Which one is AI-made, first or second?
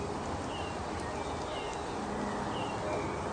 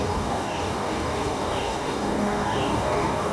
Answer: second